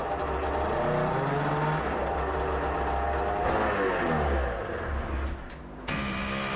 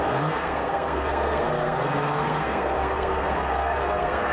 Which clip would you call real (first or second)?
first